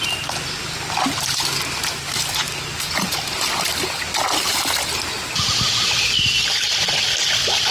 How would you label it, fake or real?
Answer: real